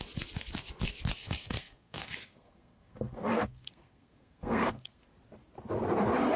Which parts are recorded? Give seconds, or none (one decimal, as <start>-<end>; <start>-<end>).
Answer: 0.0-1.2; 5.0-6.4